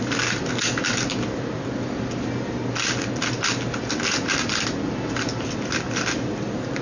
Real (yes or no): yes